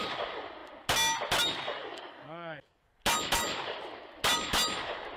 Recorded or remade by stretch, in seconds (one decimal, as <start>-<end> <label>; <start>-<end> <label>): 0.0-1.8 recorded; 1.8-2.9 remade; 2.9-5.2 recorded